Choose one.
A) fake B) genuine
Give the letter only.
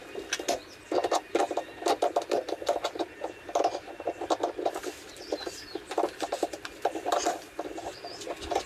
B